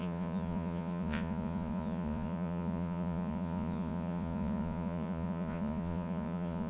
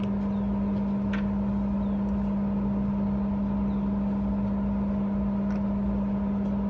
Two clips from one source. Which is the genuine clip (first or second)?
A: second